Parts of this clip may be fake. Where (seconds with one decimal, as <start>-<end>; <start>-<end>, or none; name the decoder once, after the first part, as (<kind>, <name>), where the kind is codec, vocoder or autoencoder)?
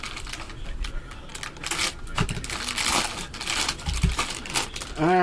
none